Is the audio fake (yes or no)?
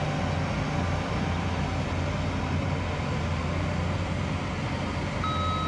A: no